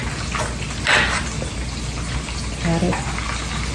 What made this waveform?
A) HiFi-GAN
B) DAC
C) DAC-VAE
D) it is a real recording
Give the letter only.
D